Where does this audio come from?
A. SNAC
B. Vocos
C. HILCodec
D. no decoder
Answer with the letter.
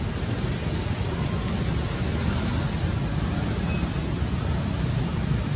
D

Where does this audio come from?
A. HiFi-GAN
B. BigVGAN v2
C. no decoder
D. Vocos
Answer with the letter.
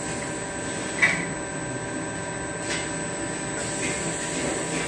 C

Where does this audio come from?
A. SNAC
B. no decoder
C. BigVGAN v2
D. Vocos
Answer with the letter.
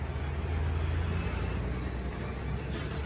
B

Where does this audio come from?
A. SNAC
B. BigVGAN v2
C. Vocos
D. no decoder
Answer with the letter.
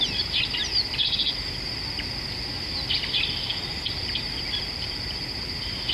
D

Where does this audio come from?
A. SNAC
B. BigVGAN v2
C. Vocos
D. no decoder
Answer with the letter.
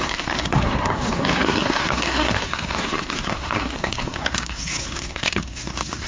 A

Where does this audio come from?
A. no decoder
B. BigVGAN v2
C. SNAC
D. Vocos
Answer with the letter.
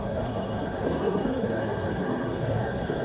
C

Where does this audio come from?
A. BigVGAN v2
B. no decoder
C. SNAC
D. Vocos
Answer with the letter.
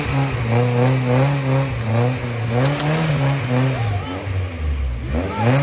B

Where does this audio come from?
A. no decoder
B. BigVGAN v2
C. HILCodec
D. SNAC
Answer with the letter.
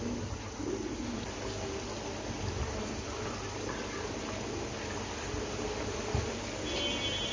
A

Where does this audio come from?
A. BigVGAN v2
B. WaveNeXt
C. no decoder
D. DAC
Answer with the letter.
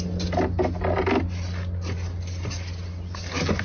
C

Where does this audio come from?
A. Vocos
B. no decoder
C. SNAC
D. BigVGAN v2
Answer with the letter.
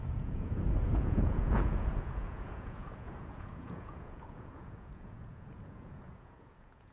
A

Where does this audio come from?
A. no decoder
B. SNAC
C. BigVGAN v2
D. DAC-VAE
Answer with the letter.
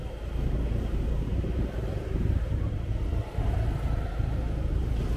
C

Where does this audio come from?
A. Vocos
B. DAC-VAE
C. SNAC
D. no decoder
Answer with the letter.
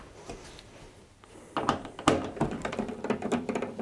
D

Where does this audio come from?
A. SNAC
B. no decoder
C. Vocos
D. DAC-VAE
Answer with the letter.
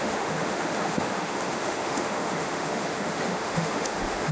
D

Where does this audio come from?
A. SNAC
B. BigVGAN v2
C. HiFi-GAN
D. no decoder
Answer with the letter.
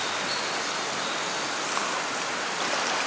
D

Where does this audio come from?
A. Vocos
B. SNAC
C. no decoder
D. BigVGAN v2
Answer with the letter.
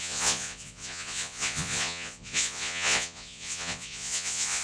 A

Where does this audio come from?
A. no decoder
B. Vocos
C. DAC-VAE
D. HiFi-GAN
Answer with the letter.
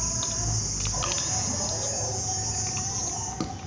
A